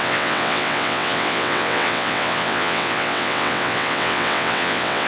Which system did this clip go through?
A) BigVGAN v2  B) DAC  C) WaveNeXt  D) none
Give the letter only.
C